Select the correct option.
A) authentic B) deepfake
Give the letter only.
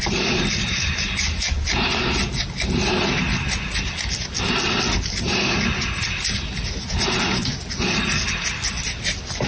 A